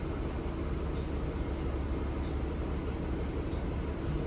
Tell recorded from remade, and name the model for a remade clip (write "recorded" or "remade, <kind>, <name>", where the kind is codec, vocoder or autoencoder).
recorded